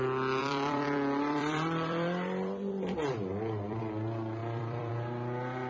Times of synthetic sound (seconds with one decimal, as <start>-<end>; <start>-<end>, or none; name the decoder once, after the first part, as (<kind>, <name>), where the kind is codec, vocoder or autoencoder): 0.4-3.8 (vocoder, BigVGAN v2); 4.4-4.9